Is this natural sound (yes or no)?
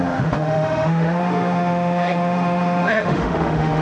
no